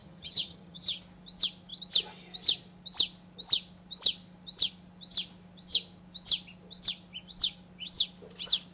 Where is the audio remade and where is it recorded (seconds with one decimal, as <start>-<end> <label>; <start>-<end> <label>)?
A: 0.0-0.8 remade; 0.8-8.7 recorded

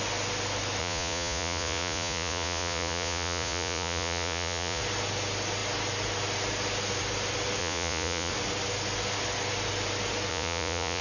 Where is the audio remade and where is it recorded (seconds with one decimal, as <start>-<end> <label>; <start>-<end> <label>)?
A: 0.0-0.8 recorded; 0.8-4.8 remade; 4.8-7.6 recorded; 7.6-8.3 remade; 8.3-10.3 recorded; 10.3-11.0 remade